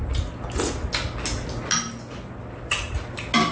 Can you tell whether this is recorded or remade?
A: recorded